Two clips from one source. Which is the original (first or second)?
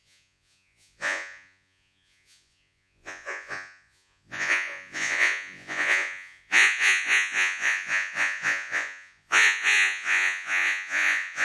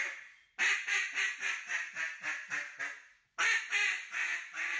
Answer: second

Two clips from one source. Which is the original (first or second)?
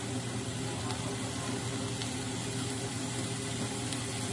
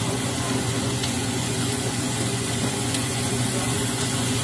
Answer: first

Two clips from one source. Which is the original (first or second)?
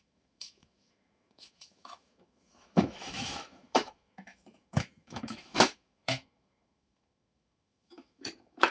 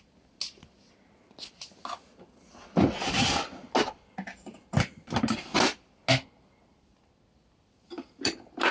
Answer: second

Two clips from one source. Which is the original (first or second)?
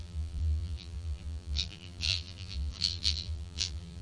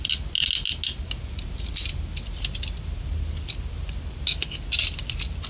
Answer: second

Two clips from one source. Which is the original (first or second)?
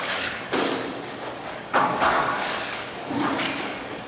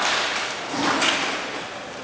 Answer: second